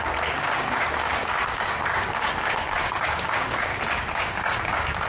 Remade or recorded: remade